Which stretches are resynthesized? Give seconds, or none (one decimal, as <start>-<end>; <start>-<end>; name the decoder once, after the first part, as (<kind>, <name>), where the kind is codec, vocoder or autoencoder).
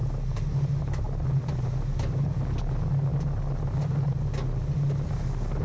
none